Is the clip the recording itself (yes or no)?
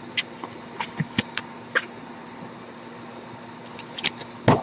yes